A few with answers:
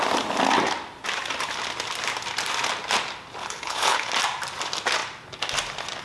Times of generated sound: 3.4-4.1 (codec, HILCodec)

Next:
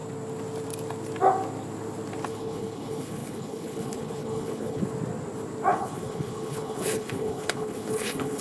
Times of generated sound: 2.3-4.8 (codec, HILCodec); 5.7-8.4

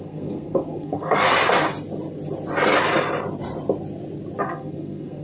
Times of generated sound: 0.0-1.3 (codec, SNAC); 4.4-5.2

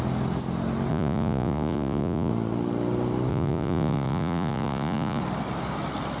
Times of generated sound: 0.9-2.3 (vocoder, Vocos); 3.3-5.2

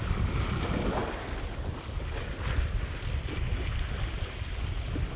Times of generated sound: none

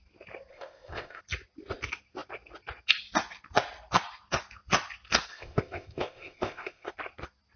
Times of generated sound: 0.5-1.2 (codec, ZipCodec); 5.3-6.9

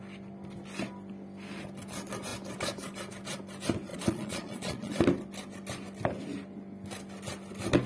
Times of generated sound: 3.9-4.9 (vocoder, Vocos)

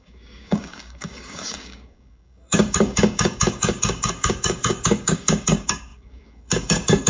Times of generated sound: 0.0-7.1 (codec, DAC)